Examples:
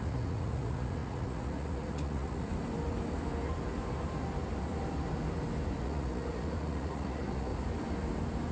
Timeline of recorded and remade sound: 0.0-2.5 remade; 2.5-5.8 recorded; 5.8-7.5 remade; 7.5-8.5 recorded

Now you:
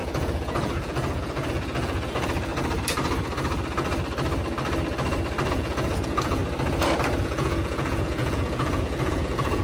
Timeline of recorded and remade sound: 0.0-2.5 remade; 2.5-5.5 recorded; 5.5-6.4 remade; 6.4-7.2 recorded; 7.2-9.6 remade

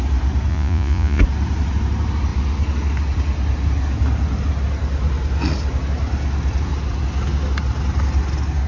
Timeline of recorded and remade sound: 0.0-0.5 recorded; 0.5-1.2 remade; 1.2-8.7 recorded

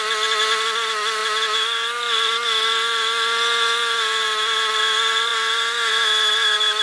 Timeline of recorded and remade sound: 0.0-6.8 recorded

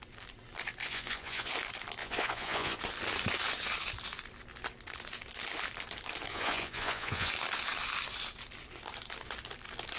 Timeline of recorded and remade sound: 0.0-0.8 recorded; 0.8-1.5 remade; 1.5-2.0 recorded; 2.0-2.8 remade; 2.8-6.3 recorded; 6.3-7.3 remade; 7.3-10.0 recorded

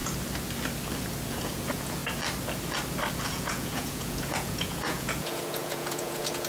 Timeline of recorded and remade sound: 0.0-1.3 recorded; 1.3-2.0 remade; 2.0-3.1 recorded; 3.1-6.5 remade

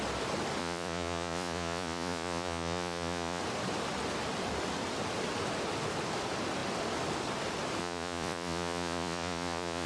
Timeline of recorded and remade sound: 0.0-0.6 recorded; 0.6-3.4 remade; 3.4-7.8 recorded; 7.8-9.9 remade

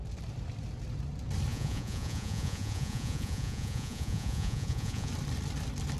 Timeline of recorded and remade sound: 0.0-1.5 recorded; 1.5-5.1 remade; 5.1-6.0 recorded